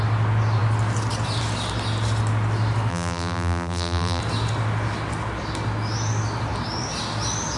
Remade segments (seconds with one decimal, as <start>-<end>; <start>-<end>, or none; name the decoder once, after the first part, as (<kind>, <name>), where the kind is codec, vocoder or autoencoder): 2.9-4.2 (vocoder, BigVGAN v2)